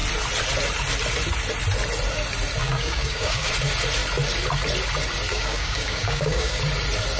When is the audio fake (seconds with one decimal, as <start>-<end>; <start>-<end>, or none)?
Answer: 2.6-3.5; 5.3-6.6